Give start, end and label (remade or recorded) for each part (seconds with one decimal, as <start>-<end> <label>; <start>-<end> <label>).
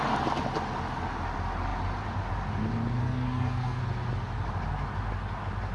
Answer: 0.0-3.0 recorded; 3.0-3.8 remade; 3.8-5.7 recorded